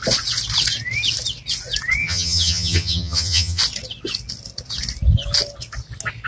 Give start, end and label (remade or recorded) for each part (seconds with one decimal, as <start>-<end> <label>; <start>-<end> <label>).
0.0-2.0 recorded; 2.0-3.6 remade; 3.6-6.3 recorded